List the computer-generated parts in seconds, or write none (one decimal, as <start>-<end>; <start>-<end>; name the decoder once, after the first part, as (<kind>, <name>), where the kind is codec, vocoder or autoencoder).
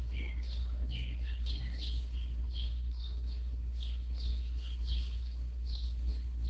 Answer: 0.0-6.5 (codec, SNAC)